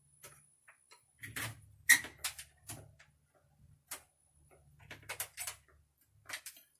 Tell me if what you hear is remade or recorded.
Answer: recorded